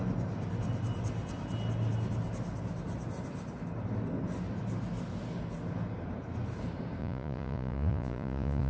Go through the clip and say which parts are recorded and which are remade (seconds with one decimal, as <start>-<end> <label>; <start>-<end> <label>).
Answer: 0.0-7.0 recorded; 7.0-8.7 remade